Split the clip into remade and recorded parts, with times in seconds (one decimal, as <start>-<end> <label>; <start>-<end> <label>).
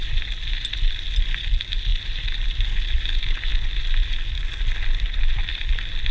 0.0-6.1 recorded